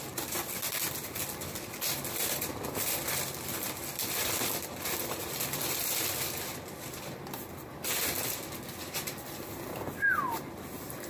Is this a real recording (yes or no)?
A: no